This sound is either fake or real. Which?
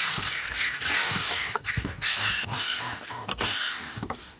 fake